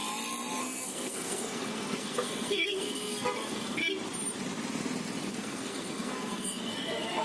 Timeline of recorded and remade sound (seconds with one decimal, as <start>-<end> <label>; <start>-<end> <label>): 0.0-0.6 recorded; 0.6-3.8 remade; 3.8-5.3 recorded; 5.3-7.2 remade